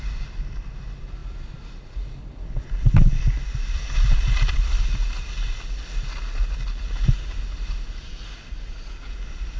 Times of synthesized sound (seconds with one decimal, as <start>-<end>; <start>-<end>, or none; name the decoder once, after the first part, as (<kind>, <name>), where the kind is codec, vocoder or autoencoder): none